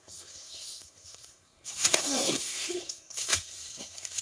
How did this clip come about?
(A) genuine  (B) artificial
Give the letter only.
B